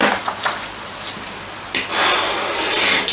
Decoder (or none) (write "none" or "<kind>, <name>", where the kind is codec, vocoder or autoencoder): none